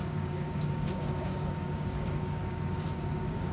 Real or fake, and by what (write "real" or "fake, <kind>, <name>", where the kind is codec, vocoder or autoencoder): fake, codec, DAC